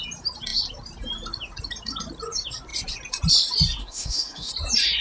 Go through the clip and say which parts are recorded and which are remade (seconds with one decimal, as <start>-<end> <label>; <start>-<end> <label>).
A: 0.0-3.8 recorded; 3.8-4.5 remade; 4.5-5.0 recorded